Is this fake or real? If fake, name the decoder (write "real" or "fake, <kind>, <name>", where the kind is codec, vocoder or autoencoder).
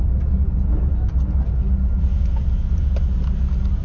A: real